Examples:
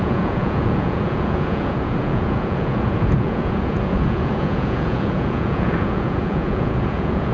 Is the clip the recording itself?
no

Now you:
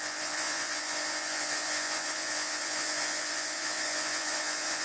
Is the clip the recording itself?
no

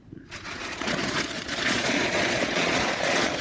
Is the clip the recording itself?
no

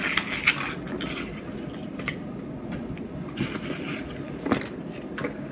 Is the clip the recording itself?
yes